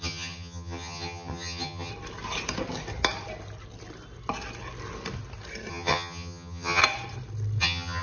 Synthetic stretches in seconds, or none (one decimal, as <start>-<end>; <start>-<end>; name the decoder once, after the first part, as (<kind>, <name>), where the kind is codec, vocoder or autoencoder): 0.0-1.9 (vocoder, HiFi-GAN); 5.7-6.8; 7.6-8.0